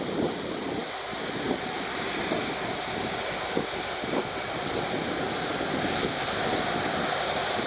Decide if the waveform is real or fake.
real